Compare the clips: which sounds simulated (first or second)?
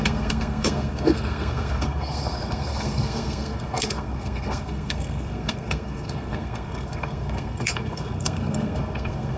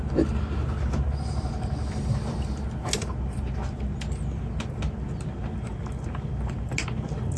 first